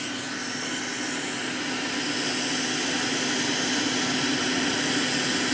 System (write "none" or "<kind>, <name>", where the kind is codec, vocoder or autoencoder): none